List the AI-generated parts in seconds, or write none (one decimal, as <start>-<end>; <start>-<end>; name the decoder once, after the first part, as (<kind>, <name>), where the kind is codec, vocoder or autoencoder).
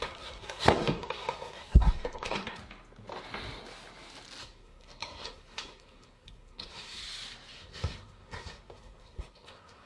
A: 0.0-2.6 (codec, SNAC); 4.4-7.0; 7.5-9.9